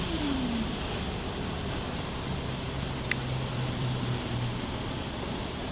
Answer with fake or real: fake